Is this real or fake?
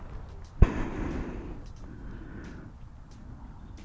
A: real